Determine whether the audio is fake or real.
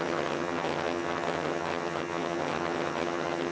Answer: fake